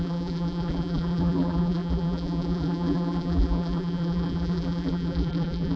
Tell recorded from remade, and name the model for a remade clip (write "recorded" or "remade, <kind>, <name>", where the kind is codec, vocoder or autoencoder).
remade, vocoder, BigVGAN v2